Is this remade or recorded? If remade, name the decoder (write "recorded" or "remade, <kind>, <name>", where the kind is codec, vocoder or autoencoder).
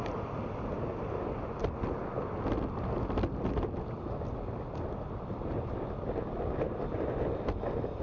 recorded